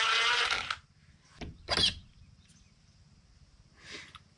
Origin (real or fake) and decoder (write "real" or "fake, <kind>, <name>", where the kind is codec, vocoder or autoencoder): real